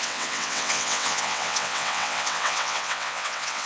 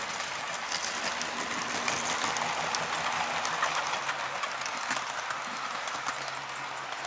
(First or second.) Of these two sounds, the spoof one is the first